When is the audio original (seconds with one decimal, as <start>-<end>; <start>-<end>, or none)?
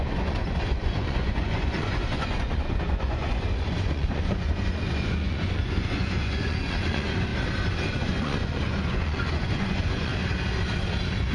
7.3-7.9; 10.1-11.3